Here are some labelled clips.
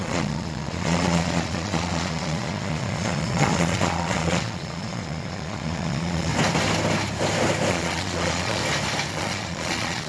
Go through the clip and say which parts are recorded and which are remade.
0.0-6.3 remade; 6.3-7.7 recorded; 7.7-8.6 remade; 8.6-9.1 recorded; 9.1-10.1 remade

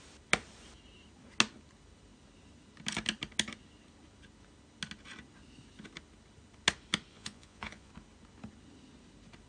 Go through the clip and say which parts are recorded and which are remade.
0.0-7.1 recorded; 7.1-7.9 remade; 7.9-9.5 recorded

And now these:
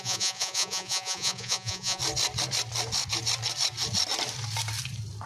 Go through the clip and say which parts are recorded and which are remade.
0.0-2.0 remade; 2.0-5.3 recorded